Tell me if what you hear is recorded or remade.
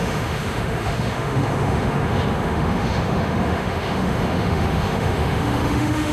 remade